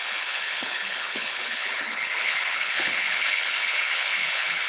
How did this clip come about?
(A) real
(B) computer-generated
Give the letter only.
B